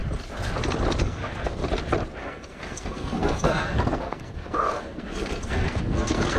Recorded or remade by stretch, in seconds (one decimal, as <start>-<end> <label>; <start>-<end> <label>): 0.0-1.0 recorded; 1.0-1.6 remade; 1.6-2.2 recorded; 2.2-6.4 remade